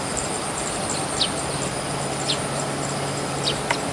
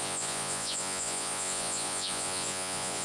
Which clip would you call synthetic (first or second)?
second